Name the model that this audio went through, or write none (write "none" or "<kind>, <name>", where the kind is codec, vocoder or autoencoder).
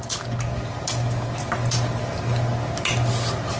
none